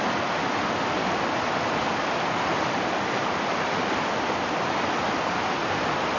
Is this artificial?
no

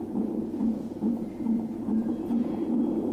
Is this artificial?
yes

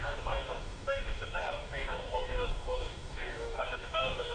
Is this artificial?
yes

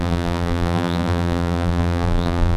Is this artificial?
yes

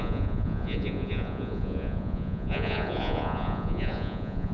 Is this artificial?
yes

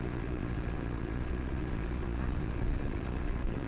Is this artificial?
yes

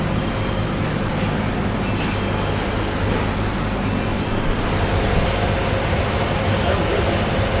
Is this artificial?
no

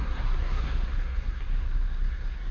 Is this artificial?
yes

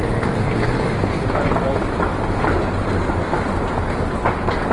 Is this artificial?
no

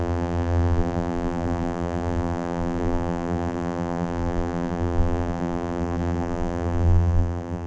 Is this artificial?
yes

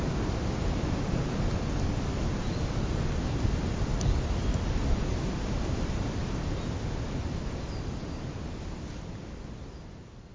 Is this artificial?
no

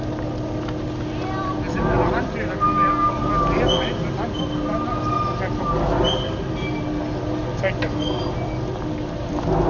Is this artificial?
no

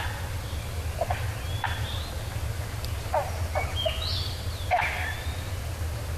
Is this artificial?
no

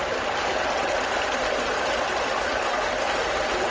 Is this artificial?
yes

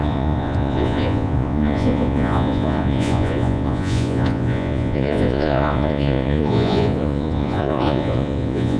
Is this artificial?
yes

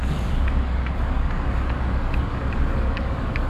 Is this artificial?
yes